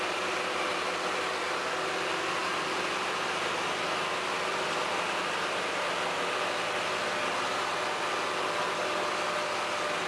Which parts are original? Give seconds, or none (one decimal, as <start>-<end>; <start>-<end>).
0.0-10.1